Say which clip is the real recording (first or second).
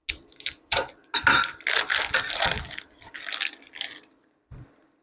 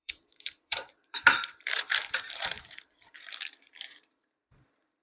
first